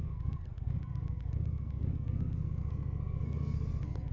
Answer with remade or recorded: remade